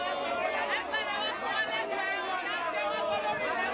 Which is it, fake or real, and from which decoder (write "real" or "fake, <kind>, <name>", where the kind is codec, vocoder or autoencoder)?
real